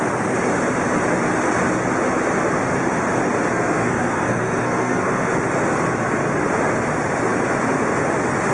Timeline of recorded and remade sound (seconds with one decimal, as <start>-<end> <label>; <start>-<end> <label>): 0.0-3.5 recorded; 3.5-5.3 remade; 5.3-8.5 recorded